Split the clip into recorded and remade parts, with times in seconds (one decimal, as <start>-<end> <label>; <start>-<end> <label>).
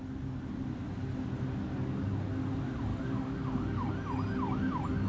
0.0-2.9 recorded; 2.9-3.9 remade; 3.9-5.1 recorded